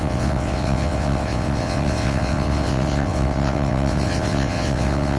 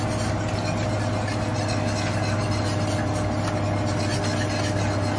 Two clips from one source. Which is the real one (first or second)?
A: second